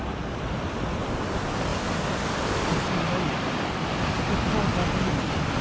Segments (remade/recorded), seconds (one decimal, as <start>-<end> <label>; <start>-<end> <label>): 0.0-5.6 recorded

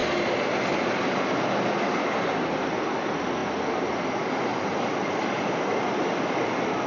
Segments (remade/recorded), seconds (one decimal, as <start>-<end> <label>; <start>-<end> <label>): 0.0-6.9 recorded

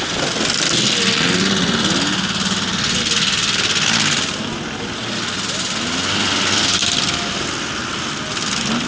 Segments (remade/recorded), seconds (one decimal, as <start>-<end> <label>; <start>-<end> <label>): 0.0-8.9 recorded

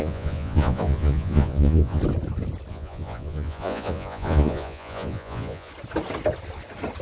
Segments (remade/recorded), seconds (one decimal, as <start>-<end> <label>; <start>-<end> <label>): 0.0-2.0 remade; 2.0-2.7 recorded; 2.7-5.7 remade; 5.7-7.0 recorded

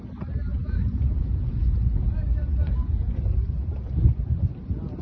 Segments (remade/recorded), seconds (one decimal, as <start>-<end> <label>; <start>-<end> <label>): 0.0-0.5 recorded; 0.5-3.5 remade; 3.5-5.0 recorded

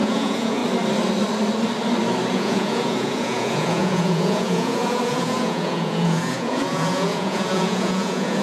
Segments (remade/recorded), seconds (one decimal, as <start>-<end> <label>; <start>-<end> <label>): 0.0-0.6 remade; 0.6-2.3 recorded; 2.3-8.4 remade

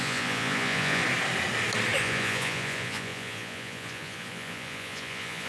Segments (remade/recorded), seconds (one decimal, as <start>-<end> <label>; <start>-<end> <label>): 0.0-1.0 remade; 1.0-2.0 recorded; 2.0-5.5 remade

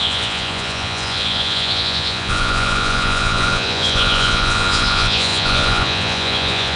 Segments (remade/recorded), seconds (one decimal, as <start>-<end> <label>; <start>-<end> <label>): 0.0-6.8 remade